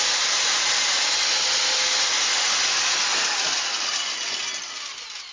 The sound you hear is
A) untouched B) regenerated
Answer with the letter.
A